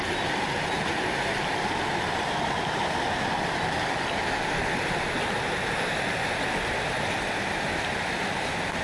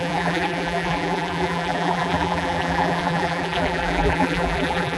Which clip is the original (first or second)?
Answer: first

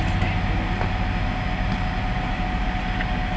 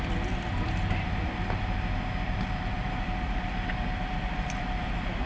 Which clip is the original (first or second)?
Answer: first